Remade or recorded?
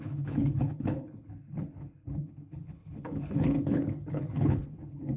remade